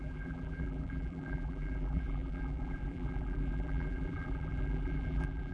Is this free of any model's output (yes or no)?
no